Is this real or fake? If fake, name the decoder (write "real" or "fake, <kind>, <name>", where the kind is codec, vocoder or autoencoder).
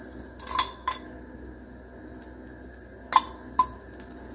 real